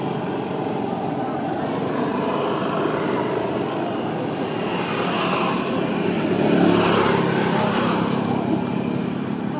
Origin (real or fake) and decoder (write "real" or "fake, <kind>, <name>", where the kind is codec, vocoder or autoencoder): real